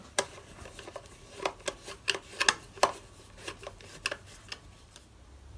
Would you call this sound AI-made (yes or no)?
no